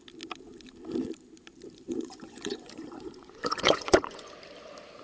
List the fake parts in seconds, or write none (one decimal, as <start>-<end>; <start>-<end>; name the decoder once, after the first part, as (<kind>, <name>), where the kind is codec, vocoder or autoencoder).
1.9-4.3 (vocoder, Vocos)